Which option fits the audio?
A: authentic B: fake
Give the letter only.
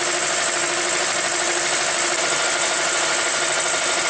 A